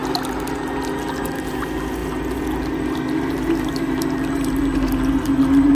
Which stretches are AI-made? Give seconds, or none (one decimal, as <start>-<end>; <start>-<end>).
none